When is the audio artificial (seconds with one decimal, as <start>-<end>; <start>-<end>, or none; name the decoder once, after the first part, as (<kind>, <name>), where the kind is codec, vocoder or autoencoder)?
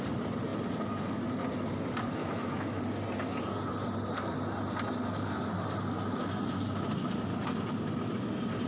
2.2-2.8 (autoencoder, DAC-VAE)